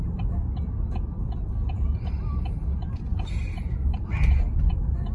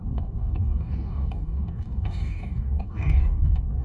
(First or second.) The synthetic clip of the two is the second